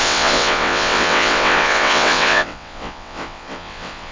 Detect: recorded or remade remade